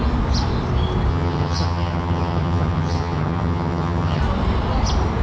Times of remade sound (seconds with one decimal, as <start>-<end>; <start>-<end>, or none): 1.1-4.2